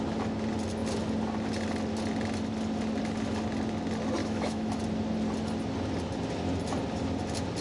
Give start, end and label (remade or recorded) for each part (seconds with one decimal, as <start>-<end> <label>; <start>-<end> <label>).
0.0-4.2 recorded; 4.2-4.8 remade; 4.8-7.6 recorded